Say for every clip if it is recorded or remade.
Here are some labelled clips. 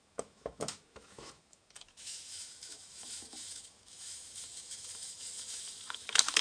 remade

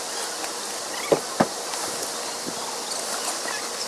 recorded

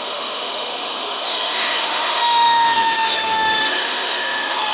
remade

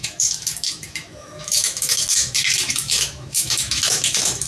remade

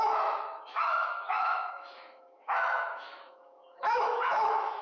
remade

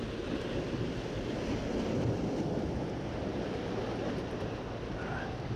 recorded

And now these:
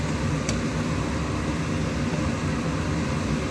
recorded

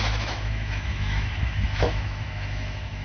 remade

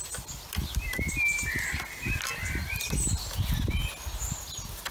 recorded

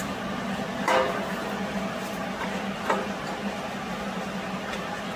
recorded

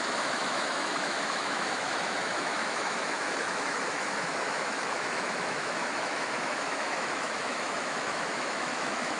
remade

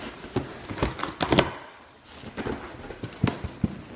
recorded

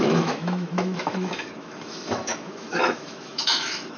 remade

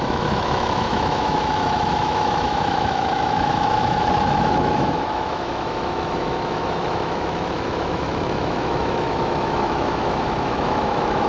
remade